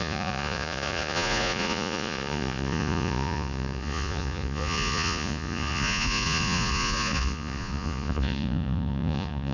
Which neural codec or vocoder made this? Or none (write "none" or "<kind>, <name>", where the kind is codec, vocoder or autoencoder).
vocoder, Vocos